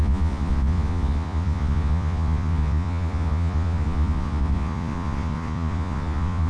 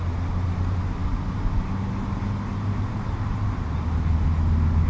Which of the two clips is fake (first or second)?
first